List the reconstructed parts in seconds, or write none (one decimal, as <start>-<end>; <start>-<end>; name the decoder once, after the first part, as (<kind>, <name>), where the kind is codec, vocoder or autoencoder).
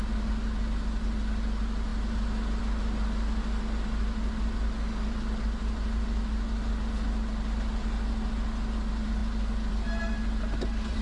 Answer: none